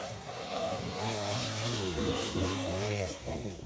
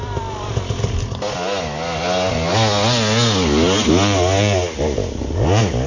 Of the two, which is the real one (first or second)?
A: second